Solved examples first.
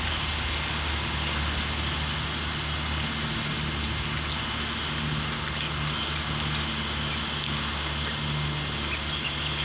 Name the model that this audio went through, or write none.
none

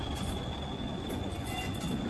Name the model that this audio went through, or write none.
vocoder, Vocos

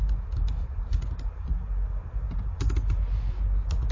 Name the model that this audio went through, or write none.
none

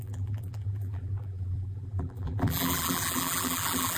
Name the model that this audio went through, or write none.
vocoder, BigVGAN v2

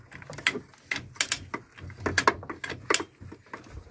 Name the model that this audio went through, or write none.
none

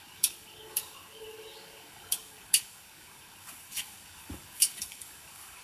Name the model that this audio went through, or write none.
codec, DAC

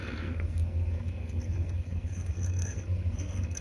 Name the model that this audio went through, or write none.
codec, SNAC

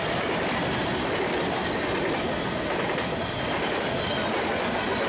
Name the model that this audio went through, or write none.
none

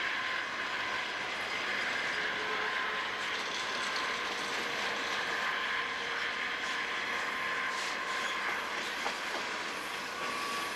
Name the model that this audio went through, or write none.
none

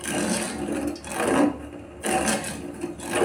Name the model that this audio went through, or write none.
none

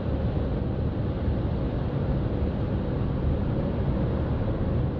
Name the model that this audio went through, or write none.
none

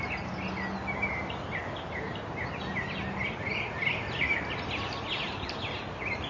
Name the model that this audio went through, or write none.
none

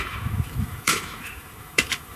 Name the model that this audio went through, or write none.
autoencoder, DAC-VAE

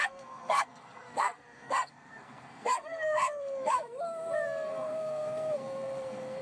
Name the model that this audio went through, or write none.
codec, SNAC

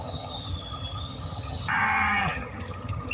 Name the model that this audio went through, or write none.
vocoder, HiFi-GAN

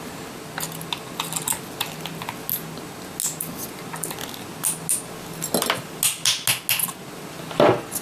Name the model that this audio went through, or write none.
none